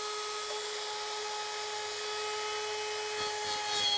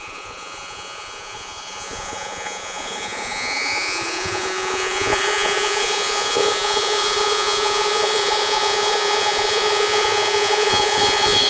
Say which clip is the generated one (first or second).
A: second